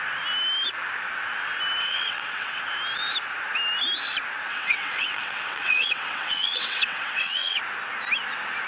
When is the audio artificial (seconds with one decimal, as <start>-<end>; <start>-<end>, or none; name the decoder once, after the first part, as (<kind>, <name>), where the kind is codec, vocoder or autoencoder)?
1.8-2.6 (vocoder, WaveNeXt); 4.5-7.6